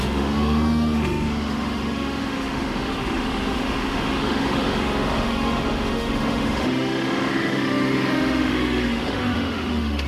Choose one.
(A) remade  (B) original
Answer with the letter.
A